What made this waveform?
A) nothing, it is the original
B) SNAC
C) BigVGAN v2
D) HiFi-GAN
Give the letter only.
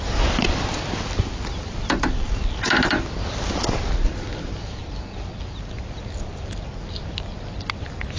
A